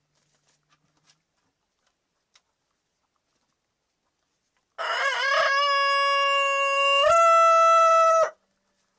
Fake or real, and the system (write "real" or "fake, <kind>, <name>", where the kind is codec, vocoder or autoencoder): real